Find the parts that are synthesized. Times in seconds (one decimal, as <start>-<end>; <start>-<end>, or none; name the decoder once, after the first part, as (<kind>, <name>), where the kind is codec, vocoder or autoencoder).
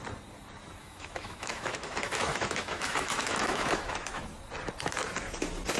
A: 0.8-4.2 (autoencoder, DAC-VAE)